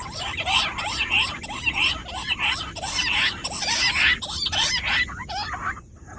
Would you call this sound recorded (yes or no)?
yes